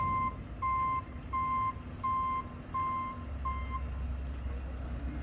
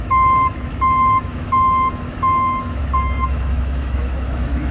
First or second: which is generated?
second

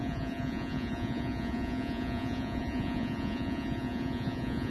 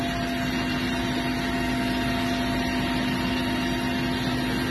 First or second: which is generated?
first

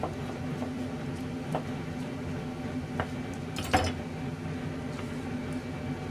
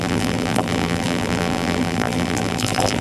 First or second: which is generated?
second